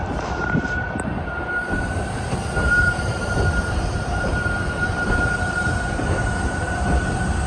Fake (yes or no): yes